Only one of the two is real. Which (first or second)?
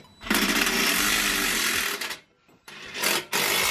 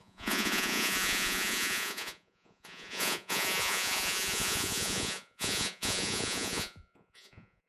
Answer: first